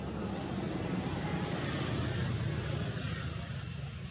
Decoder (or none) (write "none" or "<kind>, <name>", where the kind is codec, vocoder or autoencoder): none